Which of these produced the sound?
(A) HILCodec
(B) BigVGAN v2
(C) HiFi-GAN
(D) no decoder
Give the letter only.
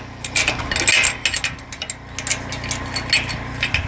D